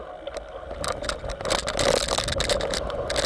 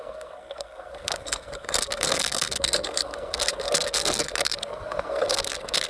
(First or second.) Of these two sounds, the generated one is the second